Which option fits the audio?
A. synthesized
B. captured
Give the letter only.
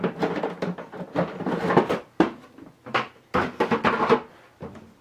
B